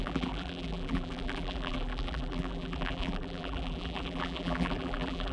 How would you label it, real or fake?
fake